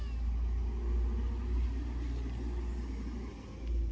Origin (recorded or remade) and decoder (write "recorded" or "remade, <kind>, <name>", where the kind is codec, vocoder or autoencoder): recorded